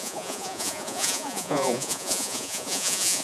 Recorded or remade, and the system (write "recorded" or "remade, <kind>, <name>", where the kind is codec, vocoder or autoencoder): remade, vocoder, Vocos